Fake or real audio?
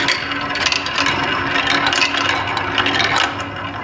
real